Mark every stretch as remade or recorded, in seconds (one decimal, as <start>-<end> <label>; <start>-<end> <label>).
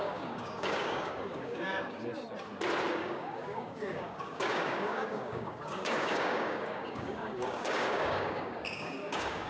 0.0-2.1 remade; 2.1-2.9 recorded; 2.9-9.5 remade